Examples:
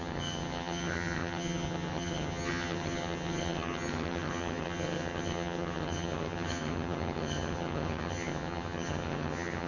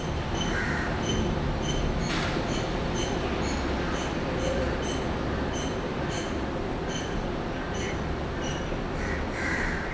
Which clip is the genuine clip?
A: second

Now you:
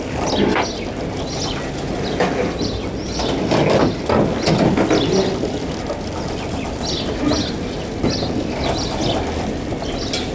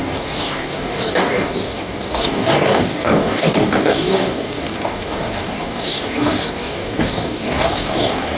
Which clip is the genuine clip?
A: first